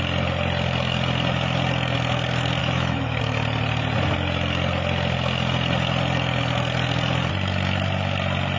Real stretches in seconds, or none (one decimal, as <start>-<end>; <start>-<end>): 0.0-2.6; 3.2-8.6